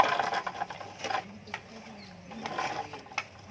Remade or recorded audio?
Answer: recorded